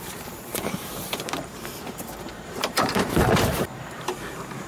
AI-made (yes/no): yes